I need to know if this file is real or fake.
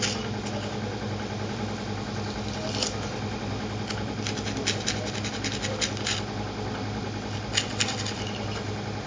real